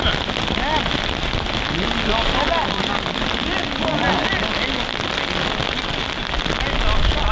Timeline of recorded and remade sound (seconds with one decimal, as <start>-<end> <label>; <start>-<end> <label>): 0.0-7.3 recorded